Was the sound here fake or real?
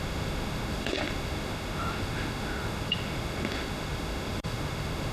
fake